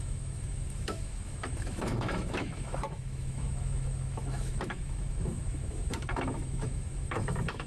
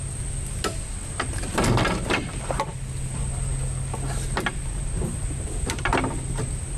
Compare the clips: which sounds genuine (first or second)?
second